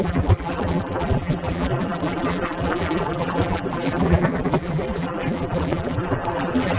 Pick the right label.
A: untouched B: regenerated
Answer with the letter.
B